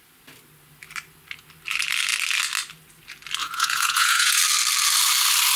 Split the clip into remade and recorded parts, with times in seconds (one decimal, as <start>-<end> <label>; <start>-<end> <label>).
0.0-3.4 recorded; 3.4-4.4 remade; 4.4-5.6 recorded